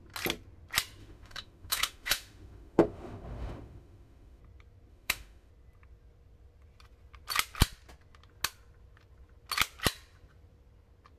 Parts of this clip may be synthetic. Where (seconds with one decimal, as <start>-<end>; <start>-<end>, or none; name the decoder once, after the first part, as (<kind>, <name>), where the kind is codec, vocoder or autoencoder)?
1.0-4.4 (autoencoder, DAC-VAE); 4.9-5.5